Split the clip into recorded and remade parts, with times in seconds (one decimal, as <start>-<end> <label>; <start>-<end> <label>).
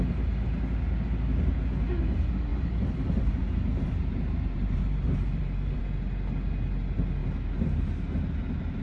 0.0-2.5 recorded; 2.5-5.8 remade; 5.8-8.8 recorded